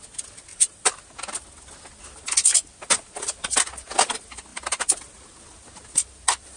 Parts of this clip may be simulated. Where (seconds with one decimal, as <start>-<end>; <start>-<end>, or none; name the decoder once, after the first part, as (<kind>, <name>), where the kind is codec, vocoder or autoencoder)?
0.5-1.1 (vocoder, BigVGAN v2)